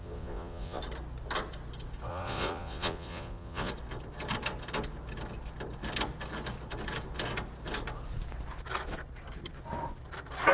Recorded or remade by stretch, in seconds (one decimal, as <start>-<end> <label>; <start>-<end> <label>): 0.0-0.8 remade; 0.8-2.1 recorded; 2.1-3.7 remade; 3.7-10.5 recorded